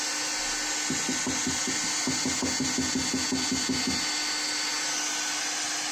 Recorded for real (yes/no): yes